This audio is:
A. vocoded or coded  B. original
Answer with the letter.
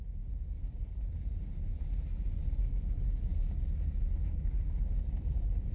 B